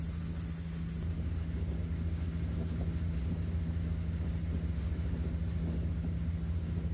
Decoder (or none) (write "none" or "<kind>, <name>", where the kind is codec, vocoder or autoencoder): none